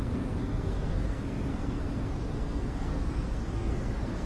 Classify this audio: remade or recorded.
remade